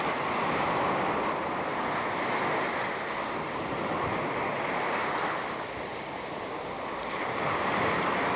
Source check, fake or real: real